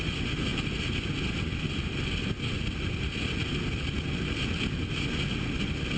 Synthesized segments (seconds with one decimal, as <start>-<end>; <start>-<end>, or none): none